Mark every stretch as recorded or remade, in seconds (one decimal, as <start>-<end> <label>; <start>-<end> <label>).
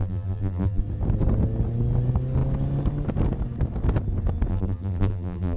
0.0-0.8 remade; 0.8-4.5 recorded; 4.5-5.6 remade